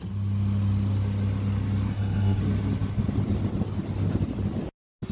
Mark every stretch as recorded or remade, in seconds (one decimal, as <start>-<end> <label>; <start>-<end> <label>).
0.0-1.9 recorded; 1.9-2.4 remade; 2.4-5.1 recorded